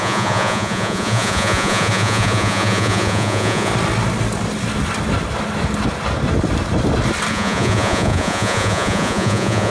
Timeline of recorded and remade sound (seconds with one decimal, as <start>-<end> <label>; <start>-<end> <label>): 0.0-3.7 remade; 3.7-7.3 recorded; 7.3-9.7 remade